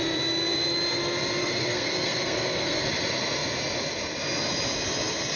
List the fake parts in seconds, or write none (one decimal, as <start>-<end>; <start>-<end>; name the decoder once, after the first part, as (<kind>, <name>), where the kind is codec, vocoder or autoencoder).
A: 1.4-2.8 (codec, SNAC)